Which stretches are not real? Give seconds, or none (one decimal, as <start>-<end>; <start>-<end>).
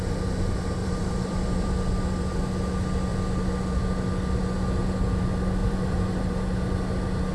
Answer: 0.8-1.7; 5.6-6.2